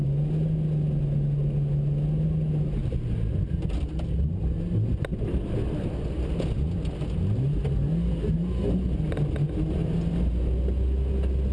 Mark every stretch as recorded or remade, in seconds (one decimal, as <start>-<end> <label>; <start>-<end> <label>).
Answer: 0.0-11.5 recorded